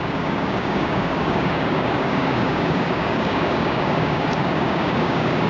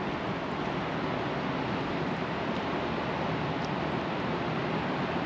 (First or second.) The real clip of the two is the second